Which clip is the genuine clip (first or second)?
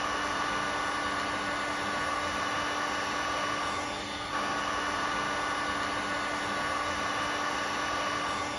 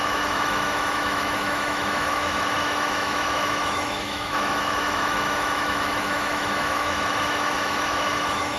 first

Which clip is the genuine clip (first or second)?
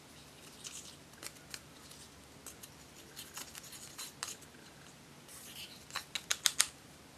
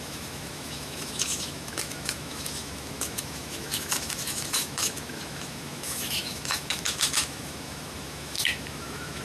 first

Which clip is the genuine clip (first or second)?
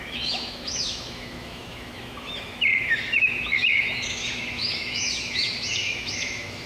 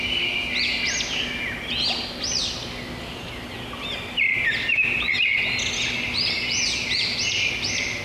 second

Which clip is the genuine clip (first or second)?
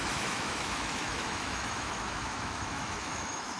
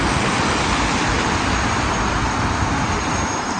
second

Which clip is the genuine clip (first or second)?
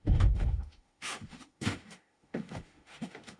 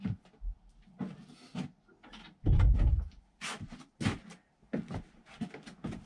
second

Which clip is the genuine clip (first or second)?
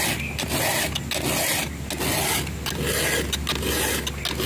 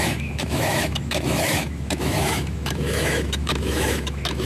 first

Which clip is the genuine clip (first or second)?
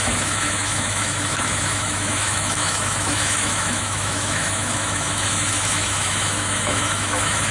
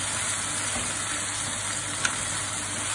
second